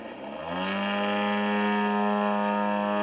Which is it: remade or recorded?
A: recorded